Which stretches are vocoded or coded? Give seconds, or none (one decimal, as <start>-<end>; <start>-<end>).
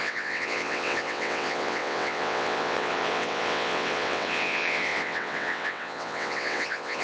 0.0-7.0